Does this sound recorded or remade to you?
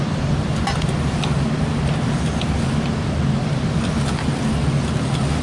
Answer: recorded